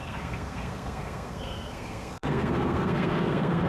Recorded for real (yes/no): no